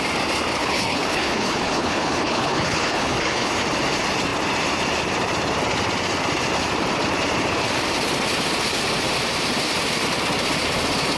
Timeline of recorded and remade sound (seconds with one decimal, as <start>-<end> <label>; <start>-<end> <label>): 0.0-0.6 recorded; 0.6-3.5 remade; 3.5-11.2 recorded